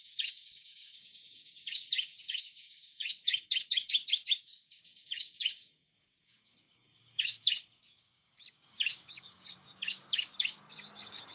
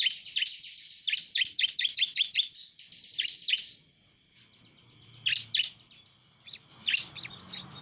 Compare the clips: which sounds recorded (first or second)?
second